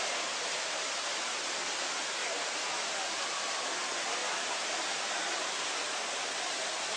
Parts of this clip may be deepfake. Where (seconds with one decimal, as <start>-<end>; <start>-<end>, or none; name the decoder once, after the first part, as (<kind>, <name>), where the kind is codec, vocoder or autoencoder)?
none

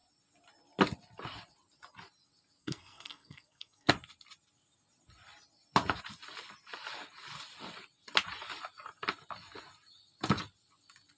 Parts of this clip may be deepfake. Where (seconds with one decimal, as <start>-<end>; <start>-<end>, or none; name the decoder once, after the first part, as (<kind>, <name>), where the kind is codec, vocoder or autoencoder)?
2.6-3.9 (codec, SNAC)

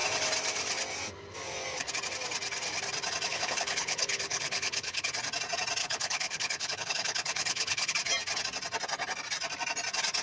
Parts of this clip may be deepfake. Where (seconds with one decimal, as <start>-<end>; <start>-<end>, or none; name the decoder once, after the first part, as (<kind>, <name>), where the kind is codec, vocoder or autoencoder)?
3.3-5.1 (codec, HILCodec); 5.8-7.9

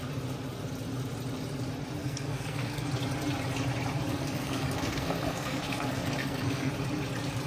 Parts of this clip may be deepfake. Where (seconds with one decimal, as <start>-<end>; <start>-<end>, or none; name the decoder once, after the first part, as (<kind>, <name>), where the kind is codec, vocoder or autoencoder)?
2.0-2.9 (codec, SNAC); 4.1-6.7

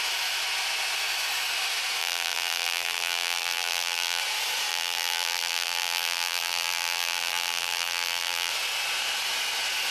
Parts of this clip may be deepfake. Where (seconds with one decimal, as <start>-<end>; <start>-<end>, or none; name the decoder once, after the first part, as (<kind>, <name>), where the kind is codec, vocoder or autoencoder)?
2.0-4.2 (vocoder, BigVGAN v2); 4.7-8.5

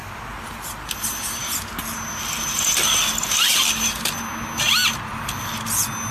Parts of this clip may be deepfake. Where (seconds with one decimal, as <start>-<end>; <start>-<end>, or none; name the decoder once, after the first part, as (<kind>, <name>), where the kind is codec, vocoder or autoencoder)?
none